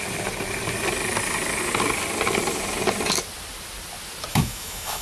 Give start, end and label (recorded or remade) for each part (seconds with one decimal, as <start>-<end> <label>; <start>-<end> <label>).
0.0-4.3 recorded; 4.3-5.0 remade